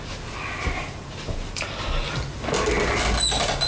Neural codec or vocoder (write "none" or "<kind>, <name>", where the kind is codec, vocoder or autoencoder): none